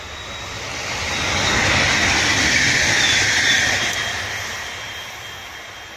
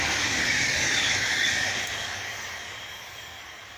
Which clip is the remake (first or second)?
second